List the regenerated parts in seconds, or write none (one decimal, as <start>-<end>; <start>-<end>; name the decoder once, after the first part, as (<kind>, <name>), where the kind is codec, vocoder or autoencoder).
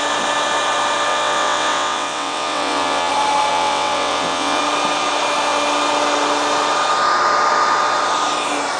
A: 1.1-3.1 (vocoder, WaveNeXt); 3.5-4.6